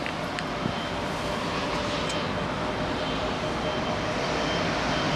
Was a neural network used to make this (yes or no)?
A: no